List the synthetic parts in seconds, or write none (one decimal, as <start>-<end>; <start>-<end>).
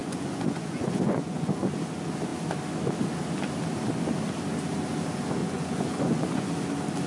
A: 0.0-1.7; 5.4-6.5